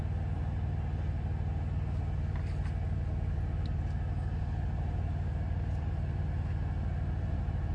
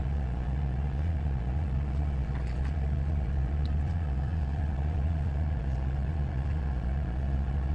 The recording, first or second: first